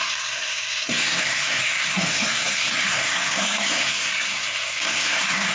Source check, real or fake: fake